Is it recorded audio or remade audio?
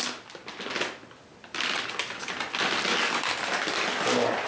recorded